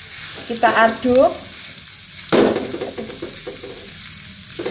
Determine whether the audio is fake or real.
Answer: real